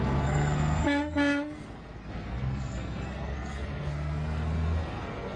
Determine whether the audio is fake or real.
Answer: fake